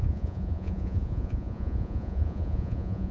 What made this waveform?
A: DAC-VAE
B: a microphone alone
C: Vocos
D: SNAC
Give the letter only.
C